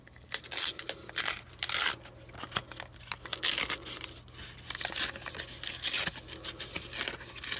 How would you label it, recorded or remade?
recorded